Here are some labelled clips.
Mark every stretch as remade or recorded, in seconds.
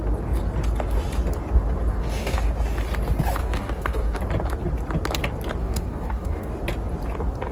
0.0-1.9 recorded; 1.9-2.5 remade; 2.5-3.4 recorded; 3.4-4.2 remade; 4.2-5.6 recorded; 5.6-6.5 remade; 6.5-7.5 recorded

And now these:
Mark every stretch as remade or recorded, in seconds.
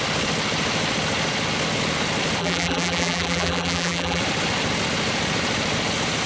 0.0-2.4 recorded; 2.4-4.2 remade; 4.2-6.3 recorded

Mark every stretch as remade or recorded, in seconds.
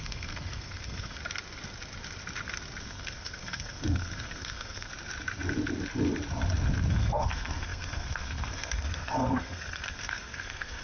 0.0-1.2 remade; 1.2-2.8 recorded; 2.8-4.9 remade; 4.9-6.9 recorded; 6.9-10.8 remade